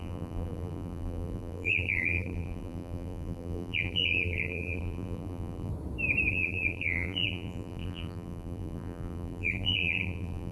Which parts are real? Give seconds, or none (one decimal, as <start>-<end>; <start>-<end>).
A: 5.7-6.3